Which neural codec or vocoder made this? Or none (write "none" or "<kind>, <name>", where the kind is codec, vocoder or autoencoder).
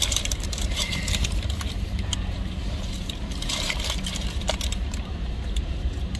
vocoder, BigVGAN v2